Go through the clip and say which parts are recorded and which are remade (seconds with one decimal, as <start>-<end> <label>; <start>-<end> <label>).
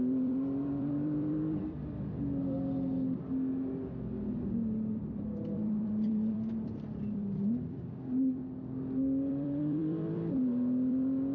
0.0-2.4 remade; 2.4-4.9 recorded; 4.9-8.4 remade; 8.4-9.3 recorded; 9.3-11.3 remade